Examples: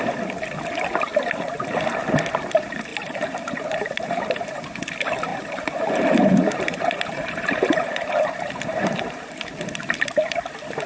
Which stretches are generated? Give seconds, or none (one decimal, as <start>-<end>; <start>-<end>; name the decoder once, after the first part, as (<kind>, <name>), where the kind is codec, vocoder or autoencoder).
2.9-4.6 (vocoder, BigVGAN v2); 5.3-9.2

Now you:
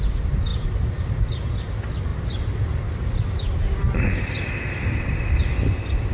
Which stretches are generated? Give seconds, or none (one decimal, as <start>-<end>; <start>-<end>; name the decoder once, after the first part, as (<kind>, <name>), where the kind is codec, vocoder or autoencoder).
none

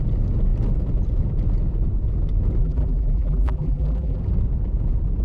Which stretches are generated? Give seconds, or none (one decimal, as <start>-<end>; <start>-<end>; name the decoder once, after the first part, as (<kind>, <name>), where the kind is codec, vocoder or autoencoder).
2.6-4.2 (vocoder, BigVGAN v2)